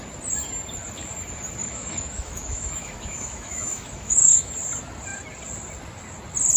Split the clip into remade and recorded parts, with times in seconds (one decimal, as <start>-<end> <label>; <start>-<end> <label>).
0.0-1.6 recorded; 1.6-4.5 remade; 4.5-6.6 recorded